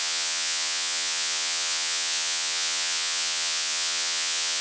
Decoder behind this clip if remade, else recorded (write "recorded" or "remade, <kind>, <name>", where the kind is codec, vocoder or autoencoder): remade, vocoder, Vocos